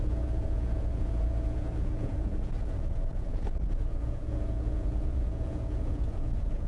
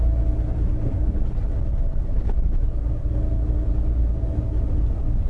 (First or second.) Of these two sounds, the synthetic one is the first